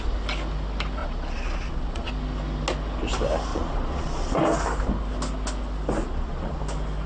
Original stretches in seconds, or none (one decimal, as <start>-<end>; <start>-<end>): 0.0-1.0; 2.1-3.5; 4.3-6.0; 6.6-7.1